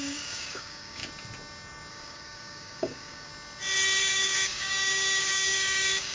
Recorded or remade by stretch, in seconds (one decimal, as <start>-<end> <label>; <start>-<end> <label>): 0.0-1.0 remade; 1.0-1.9 recorded; 1.9-3.3 remade; 3.3-4.0 recorded; 4.0-6.1 remade